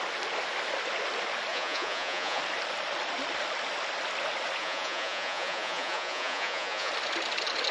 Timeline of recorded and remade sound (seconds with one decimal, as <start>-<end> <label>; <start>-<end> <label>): 0.0-1.5 recorded; 1.5-2.4 remade; 2.4-4.6 recorded; 4.6-6.9 remade; 6.9-7.7 recorded

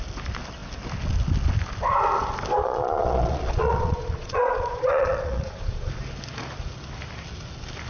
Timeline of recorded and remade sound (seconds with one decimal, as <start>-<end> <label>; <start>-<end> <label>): 0.0-2.6 recorded; 2.6-5.9 remade; 5.9-7.9 recorded

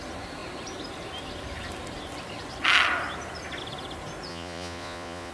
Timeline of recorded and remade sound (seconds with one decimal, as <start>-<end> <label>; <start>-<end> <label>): 0.0-4.3 recorded; 4.3-5.3 remade

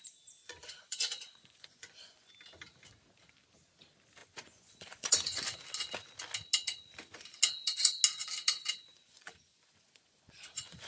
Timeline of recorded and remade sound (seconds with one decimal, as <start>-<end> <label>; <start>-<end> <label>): 0.0-0.4 recorded; 0.4-2.3 remade; 2.3-4.2 recorded; 4.2-5.6 remade; 5.6-8.9 recorded; 8.9-10.9 remade

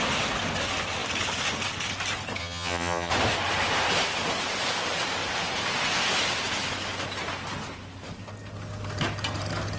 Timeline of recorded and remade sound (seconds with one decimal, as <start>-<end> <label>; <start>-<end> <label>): 0.0-2.4 recorded; 2.4-3.1 remade; 3.1-9.8 recorded

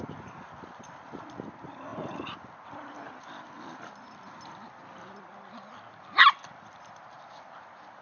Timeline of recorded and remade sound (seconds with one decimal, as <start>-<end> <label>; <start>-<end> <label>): 0.0-8.0 recorded